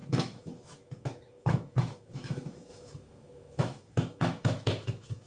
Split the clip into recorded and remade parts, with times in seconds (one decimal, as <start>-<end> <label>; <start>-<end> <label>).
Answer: 0.0-5.3 remade